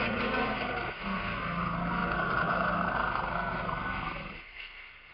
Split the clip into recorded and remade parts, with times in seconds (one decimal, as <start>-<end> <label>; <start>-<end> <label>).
0.0-5.1 remade